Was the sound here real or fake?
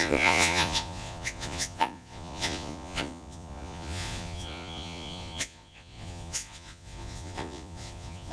fake